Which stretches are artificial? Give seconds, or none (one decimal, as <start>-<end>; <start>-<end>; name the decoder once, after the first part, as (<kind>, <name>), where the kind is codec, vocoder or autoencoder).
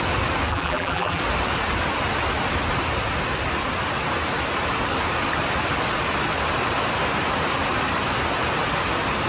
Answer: 0.5-1.2 (vocoder, BigVGAN v2)